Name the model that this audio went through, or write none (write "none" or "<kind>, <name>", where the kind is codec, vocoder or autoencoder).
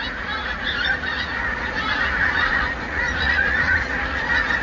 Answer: vocoder, Vocos